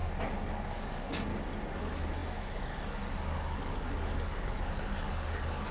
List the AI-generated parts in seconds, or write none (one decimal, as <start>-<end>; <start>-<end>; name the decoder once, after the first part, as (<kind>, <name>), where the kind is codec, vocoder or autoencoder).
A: 0.5-1.3 (codec, DAC); 1.8-5.7